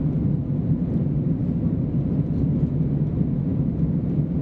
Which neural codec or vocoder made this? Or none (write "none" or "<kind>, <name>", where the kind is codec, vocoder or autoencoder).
none